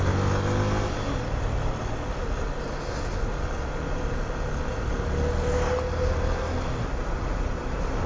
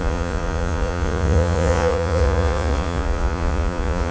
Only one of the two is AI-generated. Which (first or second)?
second